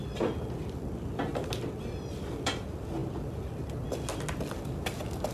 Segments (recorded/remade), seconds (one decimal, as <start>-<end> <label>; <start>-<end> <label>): 0.0-5.3 recorded